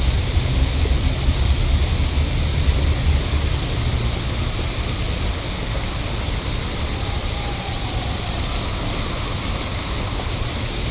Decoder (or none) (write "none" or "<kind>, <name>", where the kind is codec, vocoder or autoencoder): none